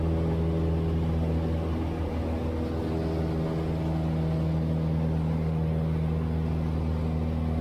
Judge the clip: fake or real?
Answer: real